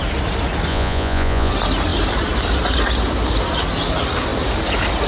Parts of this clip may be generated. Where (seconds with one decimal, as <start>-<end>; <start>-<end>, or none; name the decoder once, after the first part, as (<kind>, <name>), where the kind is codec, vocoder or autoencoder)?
0.7-1.5 (vocoder, Vocos)